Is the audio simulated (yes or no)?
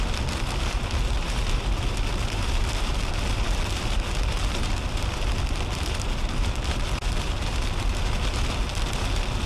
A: no